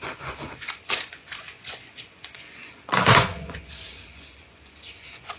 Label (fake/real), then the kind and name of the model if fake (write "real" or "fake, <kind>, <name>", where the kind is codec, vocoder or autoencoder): fake, vocoder, Vocos